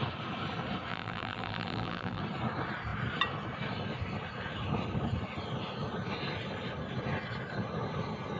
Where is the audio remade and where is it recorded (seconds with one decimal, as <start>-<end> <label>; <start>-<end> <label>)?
0.0-0.9 recorded; 0.9-2.2 remade; 2.2-8.4 recorded